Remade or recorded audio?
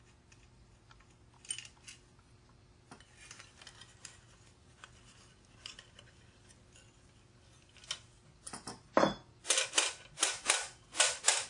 recorded